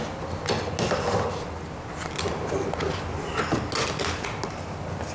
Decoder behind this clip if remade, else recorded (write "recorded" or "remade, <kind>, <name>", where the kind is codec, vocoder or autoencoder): recorded